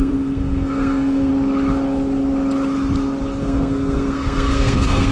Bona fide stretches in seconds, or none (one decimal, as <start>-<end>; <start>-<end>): 1.3-3.4